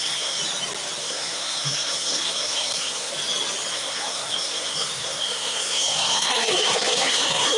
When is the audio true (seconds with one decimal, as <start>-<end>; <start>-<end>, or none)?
0.4-1.0; 3.1-3.7